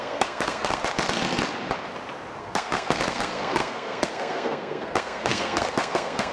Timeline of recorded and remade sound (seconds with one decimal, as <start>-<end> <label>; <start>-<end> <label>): 0.0-0.8 remade; 0.8-2.4 recorded; 2.4-6.3 remade